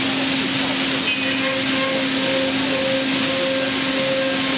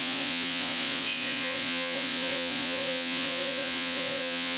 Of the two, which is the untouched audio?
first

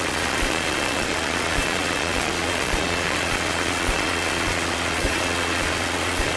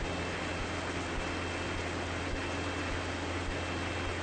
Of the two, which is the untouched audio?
second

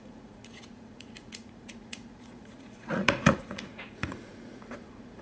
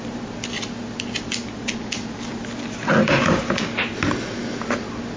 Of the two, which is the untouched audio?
second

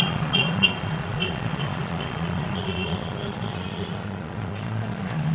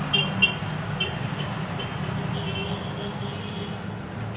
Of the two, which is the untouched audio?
second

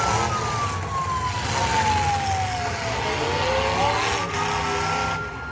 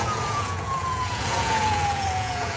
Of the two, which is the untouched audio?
first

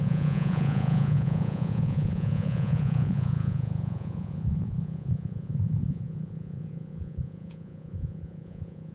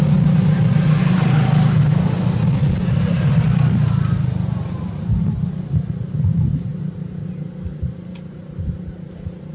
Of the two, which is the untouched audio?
second